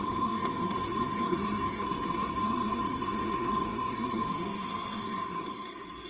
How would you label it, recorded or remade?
remade